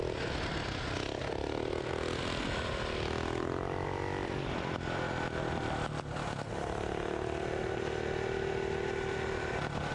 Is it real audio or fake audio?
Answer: real